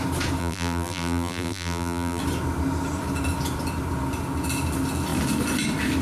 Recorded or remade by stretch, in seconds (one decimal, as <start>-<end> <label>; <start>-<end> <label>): 0.0-0.4 recorded; 0.4-2.2 remade; 2.2-6.0 recorded